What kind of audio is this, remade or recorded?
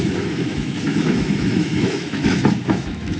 remade